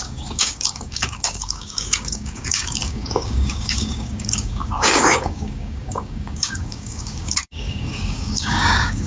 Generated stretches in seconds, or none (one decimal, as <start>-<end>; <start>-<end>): 0.0-9.1